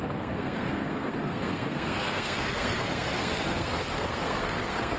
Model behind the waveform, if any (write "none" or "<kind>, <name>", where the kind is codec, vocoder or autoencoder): codec, SNAC